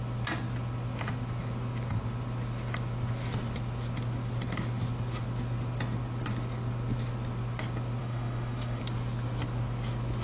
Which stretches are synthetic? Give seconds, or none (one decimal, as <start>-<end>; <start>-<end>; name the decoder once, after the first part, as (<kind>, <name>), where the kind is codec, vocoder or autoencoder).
8.0-8.8 (autoencoder, DAC-VAE)